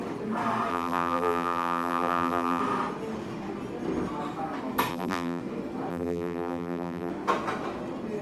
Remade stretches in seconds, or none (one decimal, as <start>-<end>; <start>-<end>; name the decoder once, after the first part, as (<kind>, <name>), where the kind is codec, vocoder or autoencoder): 0.7-2.6 (vocoder, BigVGAN v2); 4.9-5.4; 5.9-7.1